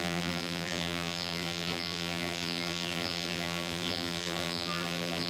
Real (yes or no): no